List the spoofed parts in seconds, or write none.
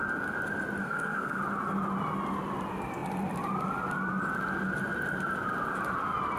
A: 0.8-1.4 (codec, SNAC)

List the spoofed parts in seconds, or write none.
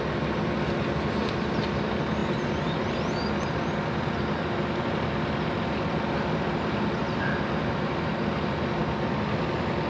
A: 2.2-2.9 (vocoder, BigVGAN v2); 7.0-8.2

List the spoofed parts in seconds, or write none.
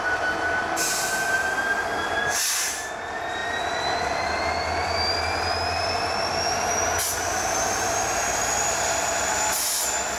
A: none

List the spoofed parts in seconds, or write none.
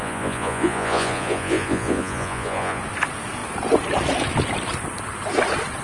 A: 0.0-2.8 (vocoder, Vocos)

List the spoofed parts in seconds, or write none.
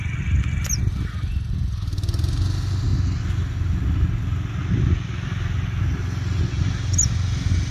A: none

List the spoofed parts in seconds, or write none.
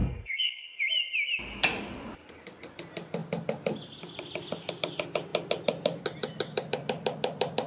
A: 0.0-0.8 (codec, SNAC)